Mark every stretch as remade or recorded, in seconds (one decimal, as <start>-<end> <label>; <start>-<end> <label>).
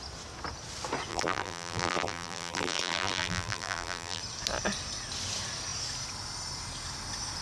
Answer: 0.0-1.1 recorded; 1.1-4.2 remade; 4.2-7.4 recorded